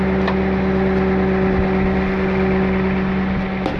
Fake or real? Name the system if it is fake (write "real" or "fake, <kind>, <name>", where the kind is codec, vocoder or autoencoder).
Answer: real